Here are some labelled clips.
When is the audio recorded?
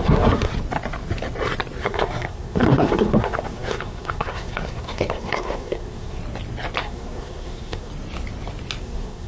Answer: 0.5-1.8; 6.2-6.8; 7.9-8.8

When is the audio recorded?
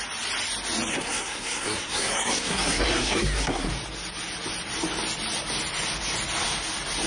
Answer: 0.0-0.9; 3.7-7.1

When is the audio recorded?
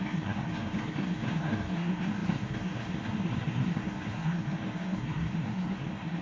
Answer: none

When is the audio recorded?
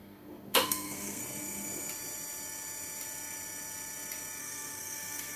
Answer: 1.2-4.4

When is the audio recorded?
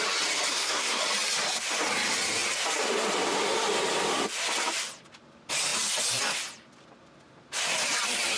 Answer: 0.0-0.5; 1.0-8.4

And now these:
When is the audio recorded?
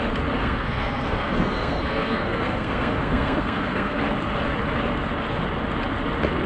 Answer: 0.0-0.4; 4.0-6.5